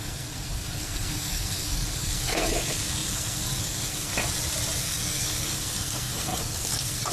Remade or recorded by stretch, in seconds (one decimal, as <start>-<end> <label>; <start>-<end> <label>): 0.0-4.1 remade; 4.1-4.8 recorded; 4.8-7.1 remade